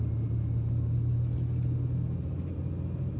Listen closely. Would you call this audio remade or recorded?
recorded